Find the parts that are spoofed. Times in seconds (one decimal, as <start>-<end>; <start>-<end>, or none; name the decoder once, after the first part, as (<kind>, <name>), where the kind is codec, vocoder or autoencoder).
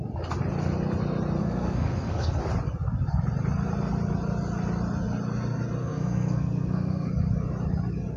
1.4-2.4 (codec, SNAC); 5.8-7.1